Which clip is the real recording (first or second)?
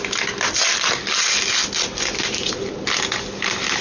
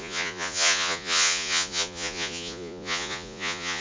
first